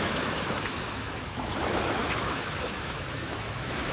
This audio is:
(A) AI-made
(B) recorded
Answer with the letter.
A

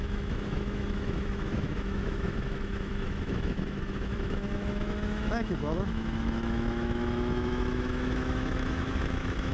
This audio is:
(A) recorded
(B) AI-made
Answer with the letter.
B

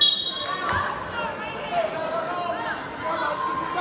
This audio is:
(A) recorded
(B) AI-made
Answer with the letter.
A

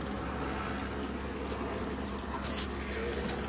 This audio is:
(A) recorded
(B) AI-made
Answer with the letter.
A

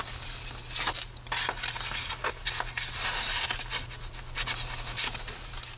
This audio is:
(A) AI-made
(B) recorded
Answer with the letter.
B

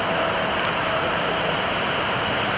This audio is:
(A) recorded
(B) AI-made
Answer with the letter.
B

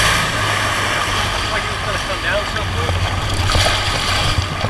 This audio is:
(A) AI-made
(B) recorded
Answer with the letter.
B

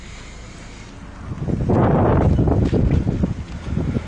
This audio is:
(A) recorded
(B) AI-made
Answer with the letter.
A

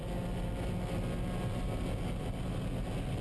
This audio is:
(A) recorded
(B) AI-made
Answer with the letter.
A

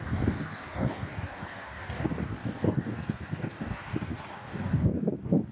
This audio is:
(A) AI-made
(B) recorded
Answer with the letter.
A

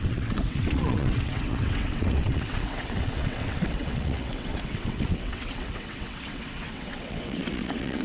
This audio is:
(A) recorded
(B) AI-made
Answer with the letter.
B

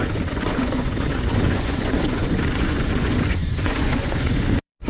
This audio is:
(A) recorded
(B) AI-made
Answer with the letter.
B